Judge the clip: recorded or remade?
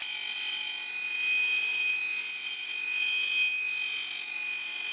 recorded